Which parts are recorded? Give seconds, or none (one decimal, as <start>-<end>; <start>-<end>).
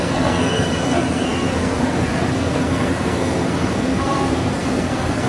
none